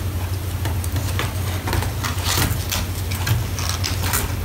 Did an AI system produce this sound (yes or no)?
no